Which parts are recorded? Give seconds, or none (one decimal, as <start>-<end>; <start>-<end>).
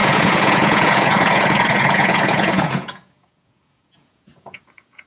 none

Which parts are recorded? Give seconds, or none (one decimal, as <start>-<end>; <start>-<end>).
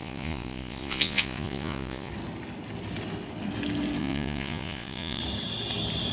2.1-4.0; 5.2-6.1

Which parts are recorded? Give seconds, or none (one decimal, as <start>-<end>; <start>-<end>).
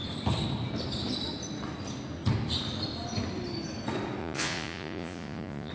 0.0-4.2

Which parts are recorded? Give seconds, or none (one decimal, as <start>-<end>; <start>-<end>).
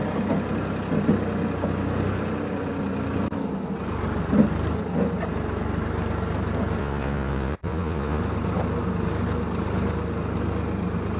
0.0-6.8; 8.2-11.2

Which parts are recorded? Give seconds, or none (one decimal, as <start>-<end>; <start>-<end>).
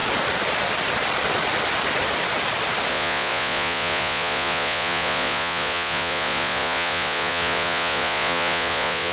0.0-2.9